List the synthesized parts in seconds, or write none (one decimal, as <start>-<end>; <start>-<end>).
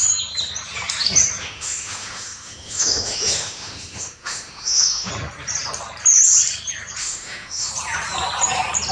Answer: 1.4-5.1; 7.0-7.7